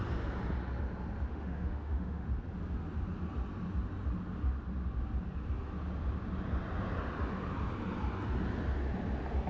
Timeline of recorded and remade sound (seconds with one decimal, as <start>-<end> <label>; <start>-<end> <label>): 0.0-1.3 recorded; 1.3-2.3 remade; 2.3-9.5 recorded